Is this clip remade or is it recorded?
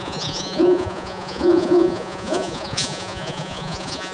remade